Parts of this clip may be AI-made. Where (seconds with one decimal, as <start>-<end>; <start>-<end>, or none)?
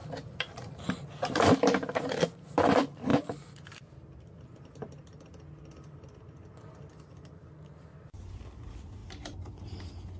none